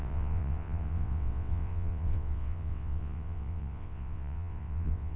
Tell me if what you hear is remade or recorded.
remade